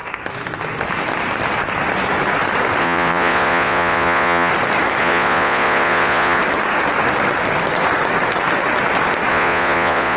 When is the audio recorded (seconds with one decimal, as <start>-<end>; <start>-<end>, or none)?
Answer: 0.0-2.8; 4.5-5.0; 6.4-9.3

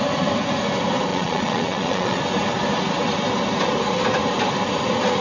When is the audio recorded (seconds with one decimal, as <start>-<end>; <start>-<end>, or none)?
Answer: 0.0-1.1; 2.2-5.2

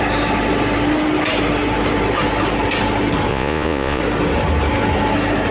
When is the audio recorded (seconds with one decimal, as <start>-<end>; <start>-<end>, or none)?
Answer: 0.0-3.3; 4.0-5.5

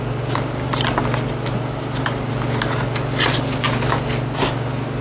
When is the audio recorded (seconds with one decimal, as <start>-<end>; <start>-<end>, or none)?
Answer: 0.0-5.0

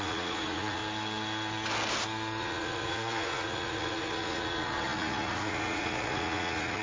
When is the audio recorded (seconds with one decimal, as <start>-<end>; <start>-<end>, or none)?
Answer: 0.8-2.4

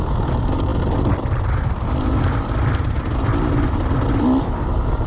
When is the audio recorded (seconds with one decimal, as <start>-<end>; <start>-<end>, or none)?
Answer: 0.0-5.1

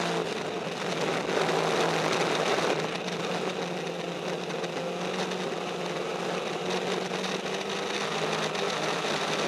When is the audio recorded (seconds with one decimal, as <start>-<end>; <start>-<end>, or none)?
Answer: 0.0-9.5

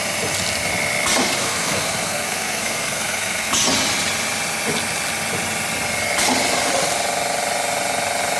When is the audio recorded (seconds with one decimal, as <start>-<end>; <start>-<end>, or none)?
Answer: 0.0-1.4; 3.5-8.4